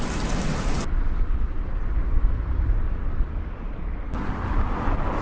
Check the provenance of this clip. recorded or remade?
recorded